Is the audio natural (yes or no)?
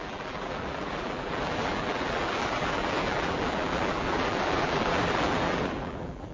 no